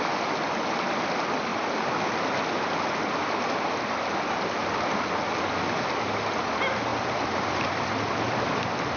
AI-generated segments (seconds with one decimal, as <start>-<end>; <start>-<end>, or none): 6.9-7.9